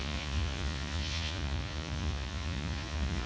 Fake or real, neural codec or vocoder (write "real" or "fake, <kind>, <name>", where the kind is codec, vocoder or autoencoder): fake, vocoder, Vocos